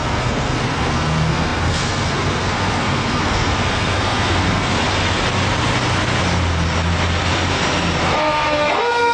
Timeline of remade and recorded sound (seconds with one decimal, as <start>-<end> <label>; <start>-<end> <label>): 0.0-4.7 remade; 4.7-8.0 recorded; 8.0-9.1 remade